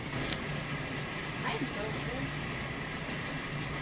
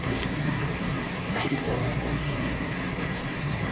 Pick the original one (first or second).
first